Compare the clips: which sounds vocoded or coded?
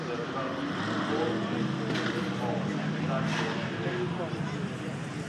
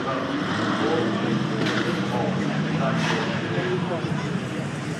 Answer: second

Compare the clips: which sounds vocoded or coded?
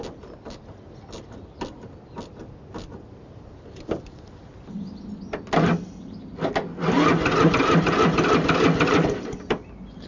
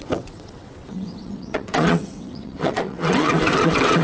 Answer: second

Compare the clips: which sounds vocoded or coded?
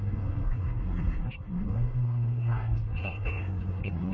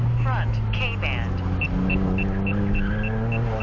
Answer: first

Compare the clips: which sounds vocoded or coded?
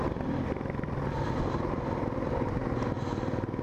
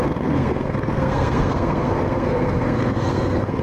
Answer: second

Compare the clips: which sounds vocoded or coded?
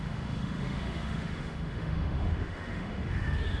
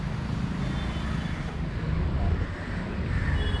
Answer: first